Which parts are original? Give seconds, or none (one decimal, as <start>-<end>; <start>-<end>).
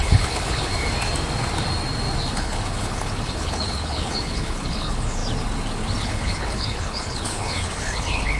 0.7-2.3; 5.2-6.0